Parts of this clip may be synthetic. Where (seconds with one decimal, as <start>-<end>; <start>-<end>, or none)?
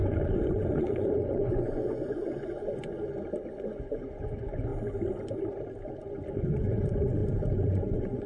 0.0-3.0; 3.7-4.7; 6.3-7.2; 7.7-8.3